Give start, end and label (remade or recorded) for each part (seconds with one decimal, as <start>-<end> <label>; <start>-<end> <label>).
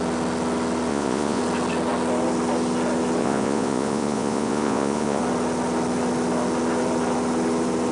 0.0-0.9 recorded; 0.9-1.4 remade; 1.4-3.2 recorded; 3.2-5.2 remade; 5.2-7.9 recorded